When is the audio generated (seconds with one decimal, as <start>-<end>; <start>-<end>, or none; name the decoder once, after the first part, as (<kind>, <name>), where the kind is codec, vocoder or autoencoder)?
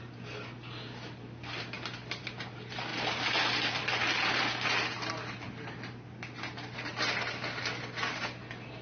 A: none